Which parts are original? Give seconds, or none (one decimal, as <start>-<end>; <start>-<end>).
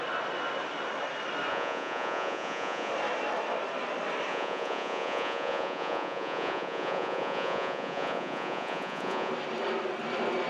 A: 0.0-1.5; 2.9-4.3; 9.3-10.5